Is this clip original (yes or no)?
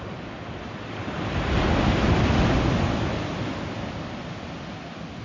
yes